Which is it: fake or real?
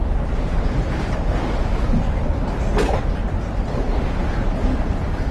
real